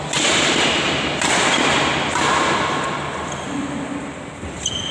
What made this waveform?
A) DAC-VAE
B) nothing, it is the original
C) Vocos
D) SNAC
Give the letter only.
B